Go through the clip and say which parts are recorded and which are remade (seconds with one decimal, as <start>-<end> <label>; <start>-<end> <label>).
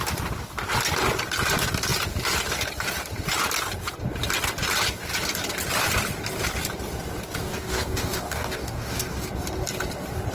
0.0-7.4 recorded; 7.4-9.3 remade; 9.3-10.3 recorded